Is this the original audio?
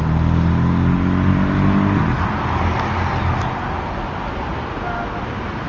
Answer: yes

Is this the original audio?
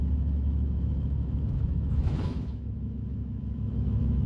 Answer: no